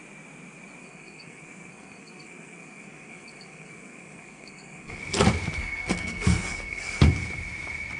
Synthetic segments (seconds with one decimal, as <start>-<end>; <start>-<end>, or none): 0.8-5.0; 5.6-7.1